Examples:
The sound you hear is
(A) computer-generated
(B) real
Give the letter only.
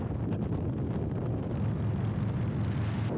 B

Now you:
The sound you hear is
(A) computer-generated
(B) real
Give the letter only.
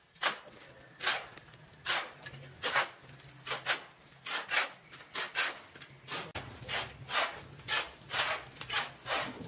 B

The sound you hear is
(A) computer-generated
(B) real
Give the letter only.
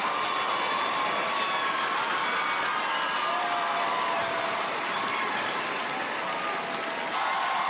B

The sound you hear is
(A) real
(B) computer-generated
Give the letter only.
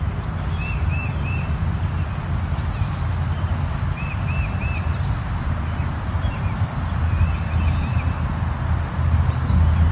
A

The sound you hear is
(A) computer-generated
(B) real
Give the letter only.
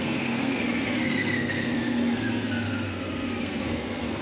A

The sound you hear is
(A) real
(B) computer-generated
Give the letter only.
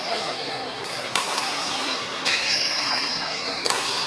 B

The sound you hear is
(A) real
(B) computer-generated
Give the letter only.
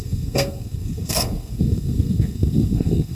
B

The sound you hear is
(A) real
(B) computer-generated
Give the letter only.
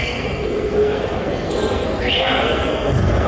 B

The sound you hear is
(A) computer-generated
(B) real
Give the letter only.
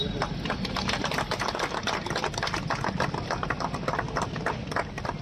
B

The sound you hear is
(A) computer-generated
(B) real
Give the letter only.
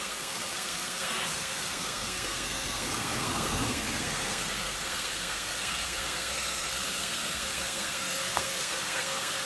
A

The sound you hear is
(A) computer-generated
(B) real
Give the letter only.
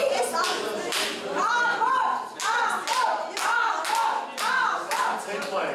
B